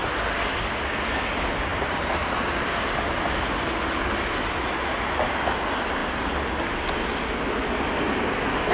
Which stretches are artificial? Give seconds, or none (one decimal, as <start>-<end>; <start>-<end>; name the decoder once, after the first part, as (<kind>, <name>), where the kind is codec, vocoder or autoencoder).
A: none